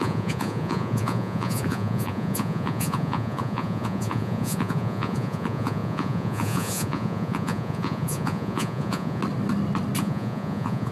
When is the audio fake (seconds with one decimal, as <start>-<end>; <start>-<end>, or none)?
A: 0.0-9.2; 10.0-10.9